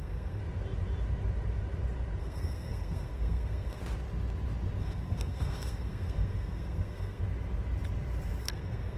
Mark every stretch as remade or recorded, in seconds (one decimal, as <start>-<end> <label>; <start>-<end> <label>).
0.0-0.4 remade; 0.4-2.2 recorded; 2.2-3.8 remade; 3.8-4.8 recorded; 4.8-7.2 remade; 7.2-8.4 recorded; 8.4-9.0 remade